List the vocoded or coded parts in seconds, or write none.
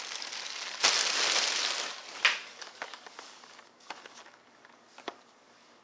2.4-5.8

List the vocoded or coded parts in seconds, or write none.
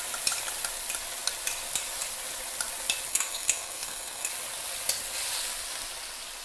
3.1-4.3